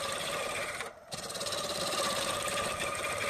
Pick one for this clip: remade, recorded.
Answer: remade